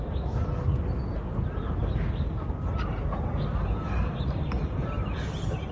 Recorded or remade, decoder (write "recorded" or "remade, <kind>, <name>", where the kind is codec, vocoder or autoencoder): recorded